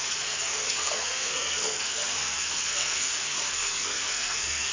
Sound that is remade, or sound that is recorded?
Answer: remade